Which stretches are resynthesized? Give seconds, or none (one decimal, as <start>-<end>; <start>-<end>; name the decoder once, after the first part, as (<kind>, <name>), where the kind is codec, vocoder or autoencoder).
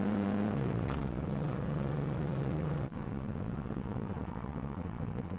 0.0-5.4 (vocoder, WaveNeXt)